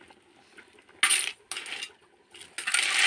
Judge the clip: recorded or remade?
recorded